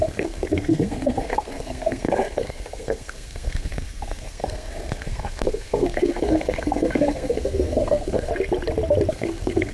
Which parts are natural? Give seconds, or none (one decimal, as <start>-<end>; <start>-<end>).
8.3-9.1